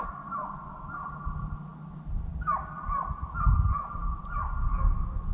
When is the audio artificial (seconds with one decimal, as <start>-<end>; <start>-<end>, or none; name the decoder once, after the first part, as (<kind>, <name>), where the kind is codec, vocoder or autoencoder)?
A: none